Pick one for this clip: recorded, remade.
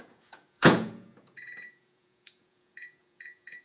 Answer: remade